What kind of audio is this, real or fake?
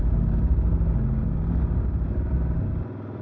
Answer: real